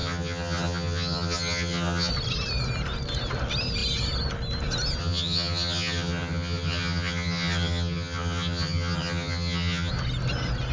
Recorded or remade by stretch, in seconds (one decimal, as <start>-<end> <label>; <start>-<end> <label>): 0.0-2.1 remade; 2.1-5.0 recorded; 5.0-9.9 remade; 9.9-10.7 recorded

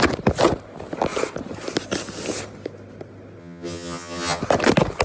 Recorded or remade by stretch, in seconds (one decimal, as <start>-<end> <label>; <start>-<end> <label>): 0.0-3.4 recorded; 3.4-4.4 remade; 4.4-5.0 recorded

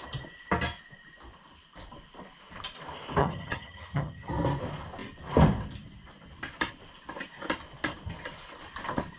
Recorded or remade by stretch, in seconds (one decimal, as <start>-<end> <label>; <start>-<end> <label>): 0.0-3.2 recorded; 3.2-4.3 remade; 4.3-9.2 recorded

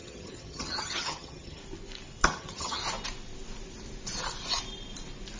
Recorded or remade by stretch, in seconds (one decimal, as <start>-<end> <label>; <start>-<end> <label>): 0.0-1.6 remade; 1.6-2.2 recorded; 2.2-2.8 remade; 2.8-5.4 recorded

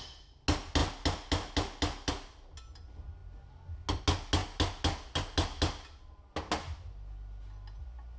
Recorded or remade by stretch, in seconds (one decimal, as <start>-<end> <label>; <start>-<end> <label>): 0.0-8.2 recorded

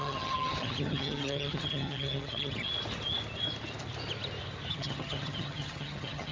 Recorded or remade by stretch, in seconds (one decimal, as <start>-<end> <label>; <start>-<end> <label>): 0.0-2.7 remade; 2.7-4.7 recorded; 4.7-6.3 remade